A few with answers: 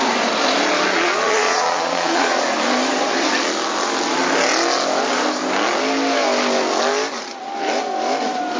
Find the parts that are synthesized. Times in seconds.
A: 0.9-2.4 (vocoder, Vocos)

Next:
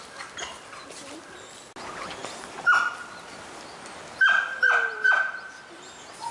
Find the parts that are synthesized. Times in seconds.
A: none